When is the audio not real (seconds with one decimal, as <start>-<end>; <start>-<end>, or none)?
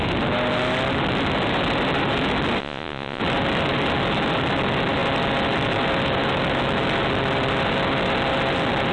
2.6-3.2